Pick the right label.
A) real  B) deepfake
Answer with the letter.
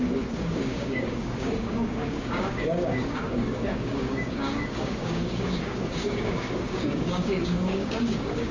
B